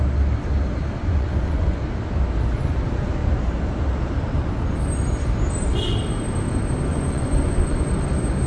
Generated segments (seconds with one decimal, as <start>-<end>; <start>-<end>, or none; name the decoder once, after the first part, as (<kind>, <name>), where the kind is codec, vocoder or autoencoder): 1.0-1.8 (vocoder, Vocos); 6.9-7.9